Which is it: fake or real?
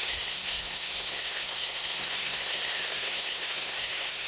fake